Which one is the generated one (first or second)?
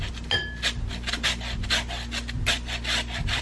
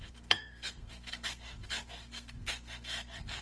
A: second